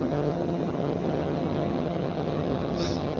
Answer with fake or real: fake